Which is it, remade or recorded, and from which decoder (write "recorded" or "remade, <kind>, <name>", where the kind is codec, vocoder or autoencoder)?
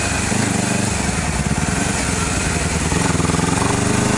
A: recorded